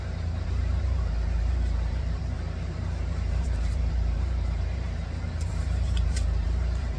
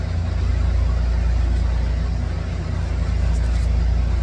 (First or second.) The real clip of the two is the second